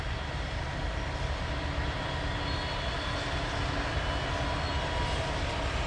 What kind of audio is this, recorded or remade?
recorded